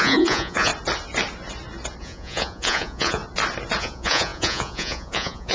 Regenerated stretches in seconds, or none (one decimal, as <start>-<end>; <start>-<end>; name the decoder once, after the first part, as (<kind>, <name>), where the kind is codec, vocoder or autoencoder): 0.0-0.7 (vocoder, Vocos); 2.0-3.2; 3.8-5.5